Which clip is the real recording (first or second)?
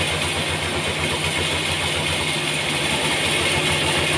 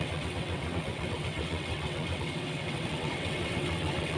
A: first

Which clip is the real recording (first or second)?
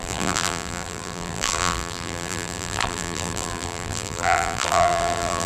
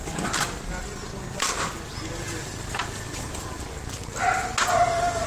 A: second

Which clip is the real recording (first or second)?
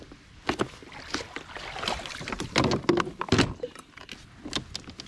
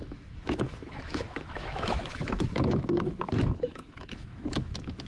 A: first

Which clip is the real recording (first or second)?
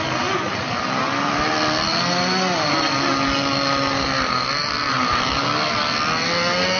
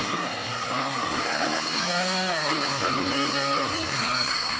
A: first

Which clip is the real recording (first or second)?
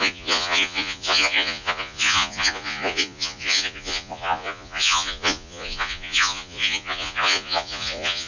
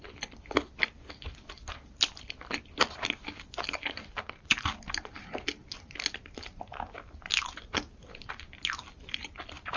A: second